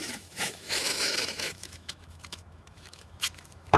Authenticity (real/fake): fake